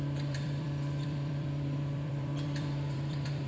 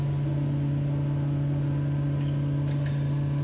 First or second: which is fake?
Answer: first